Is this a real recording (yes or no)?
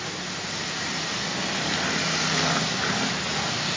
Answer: yes